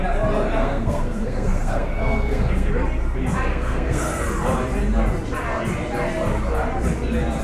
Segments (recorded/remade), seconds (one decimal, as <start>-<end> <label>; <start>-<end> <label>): 0.0-0.6 recorded; 0.6-2.7 remade; 2.7-3.5 recorded; 3.5-4.2 remade; 4.2-7.4 recorded